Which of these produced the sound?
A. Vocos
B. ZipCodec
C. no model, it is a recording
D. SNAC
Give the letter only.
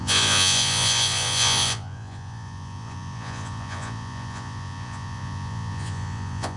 A